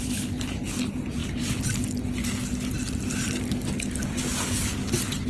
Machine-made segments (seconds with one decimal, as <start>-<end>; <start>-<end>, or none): none

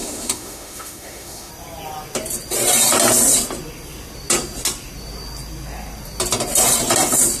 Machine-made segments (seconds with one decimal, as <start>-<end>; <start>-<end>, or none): 0.0-1.5

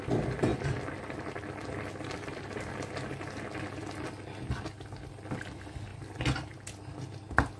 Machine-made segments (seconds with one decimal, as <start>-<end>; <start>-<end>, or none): none

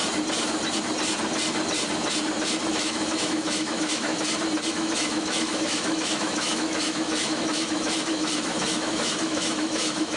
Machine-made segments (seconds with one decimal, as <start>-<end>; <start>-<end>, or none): 2.7-4.1; 4.7-10.2

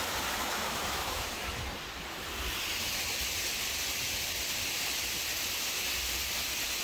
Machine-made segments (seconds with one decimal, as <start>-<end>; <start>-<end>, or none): 0.4-1.2